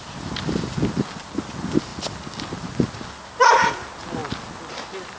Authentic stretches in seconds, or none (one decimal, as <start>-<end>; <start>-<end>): 0.0-5.2